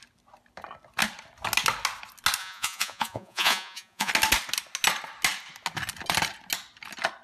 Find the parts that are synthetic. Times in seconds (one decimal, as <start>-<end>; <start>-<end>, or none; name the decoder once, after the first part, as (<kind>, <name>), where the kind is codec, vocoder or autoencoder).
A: 2.4-4.1 (vocoder, Vocos)